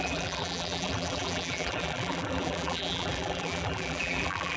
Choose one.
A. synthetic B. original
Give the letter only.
A